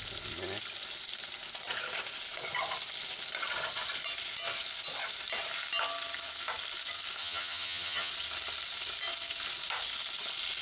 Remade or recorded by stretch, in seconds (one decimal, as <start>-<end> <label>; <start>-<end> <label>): 0.0-7.2 recorded; 7.2-8.1 remade; 8.1-10.6 recorded